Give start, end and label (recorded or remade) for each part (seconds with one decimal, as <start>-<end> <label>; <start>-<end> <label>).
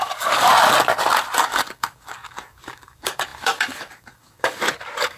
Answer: 0.0-0.5 remade; 0.5-1.4 recorded; 1.4-5.2 remade